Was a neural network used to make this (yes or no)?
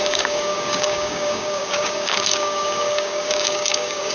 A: yes